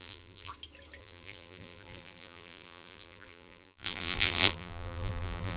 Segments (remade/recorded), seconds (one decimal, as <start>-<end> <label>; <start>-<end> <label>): 0.0-0.5 remade; 0.5-1.0 recorded; 1.0-5.6 remade